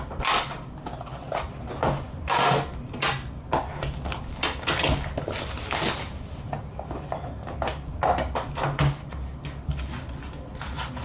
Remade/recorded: recorded